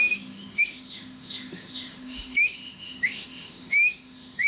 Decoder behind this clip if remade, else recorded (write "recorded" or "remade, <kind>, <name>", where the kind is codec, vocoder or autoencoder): remade, autoencoder, DAC-VAE